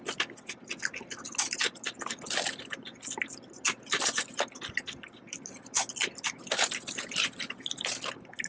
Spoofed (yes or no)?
no